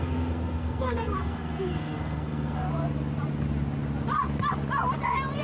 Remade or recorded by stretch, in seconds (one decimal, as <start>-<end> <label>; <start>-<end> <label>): 0.0-2.6 remade; 2.6-5.4 recorded